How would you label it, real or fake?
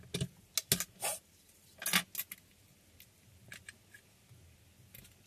real